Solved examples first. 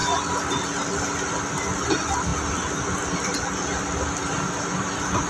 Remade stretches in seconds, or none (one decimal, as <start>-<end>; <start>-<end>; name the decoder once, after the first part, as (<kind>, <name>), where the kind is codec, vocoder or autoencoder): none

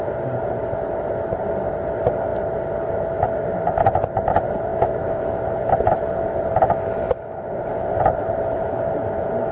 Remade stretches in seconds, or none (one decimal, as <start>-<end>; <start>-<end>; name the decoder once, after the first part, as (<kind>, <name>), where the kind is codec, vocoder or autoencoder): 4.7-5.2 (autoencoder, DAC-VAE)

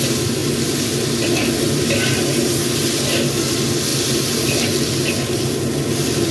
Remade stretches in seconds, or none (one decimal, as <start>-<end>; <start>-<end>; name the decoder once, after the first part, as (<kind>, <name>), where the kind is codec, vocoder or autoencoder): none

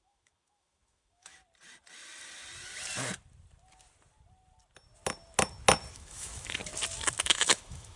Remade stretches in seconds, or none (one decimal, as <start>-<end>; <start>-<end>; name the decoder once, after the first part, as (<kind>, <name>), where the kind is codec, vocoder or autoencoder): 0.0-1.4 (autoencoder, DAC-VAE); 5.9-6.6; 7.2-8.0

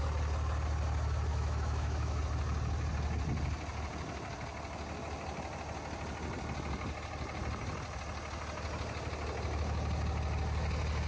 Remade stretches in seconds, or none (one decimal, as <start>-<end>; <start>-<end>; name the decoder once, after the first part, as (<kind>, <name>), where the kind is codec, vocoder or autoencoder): 1.3-2.2 (autoencoder, DAC-VAE)

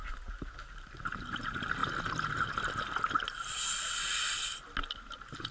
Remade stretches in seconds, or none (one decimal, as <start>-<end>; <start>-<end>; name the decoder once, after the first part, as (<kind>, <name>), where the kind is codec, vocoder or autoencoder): none

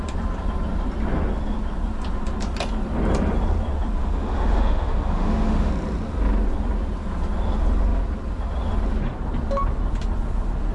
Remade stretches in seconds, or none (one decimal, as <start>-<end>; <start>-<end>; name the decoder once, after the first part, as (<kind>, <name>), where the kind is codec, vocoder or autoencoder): 4.0-5.7 (autoencoder, DAC-VAE)